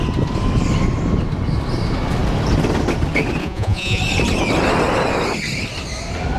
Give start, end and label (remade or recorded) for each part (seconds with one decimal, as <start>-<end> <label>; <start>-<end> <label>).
0.0-3.4 recorded; 3.4-4.0 remade; 4.0-6.4 recorded